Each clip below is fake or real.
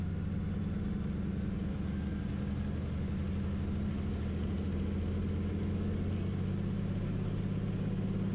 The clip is real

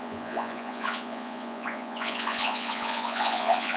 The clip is fake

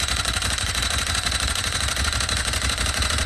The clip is fake